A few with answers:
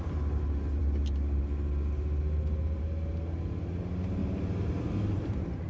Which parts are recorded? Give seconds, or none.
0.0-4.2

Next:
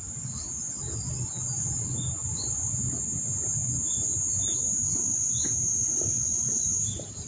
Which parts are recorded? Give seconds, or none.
0.0-2.2; 2.7-5.7; 6.6-7.3

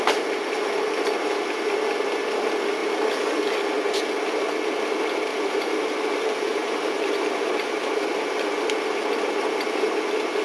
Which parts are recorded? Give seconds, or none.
0.0-5.3; 7.5-10.4

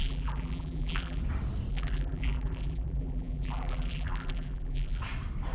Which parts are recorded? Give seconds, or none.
1.2-1.7; 5.0-5.5

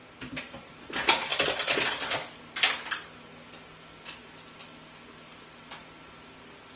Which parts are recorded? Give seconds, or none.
0.8-6.8

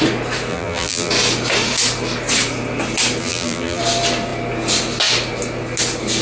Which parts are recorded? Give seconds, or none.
0.0-0.5; 1.1-3.2; 3.8-6.2

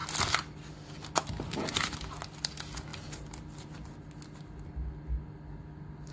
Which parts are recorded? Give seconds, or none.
0.0-6.1